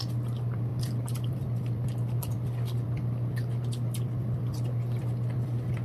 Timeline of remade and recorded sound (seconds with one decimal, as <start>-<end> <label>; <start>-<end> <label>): 0.0-5.8 recorded